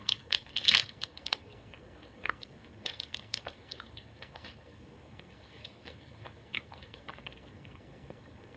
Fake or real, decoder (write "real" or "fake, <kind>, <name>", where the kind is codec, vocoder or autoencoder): fake, codec, SNAC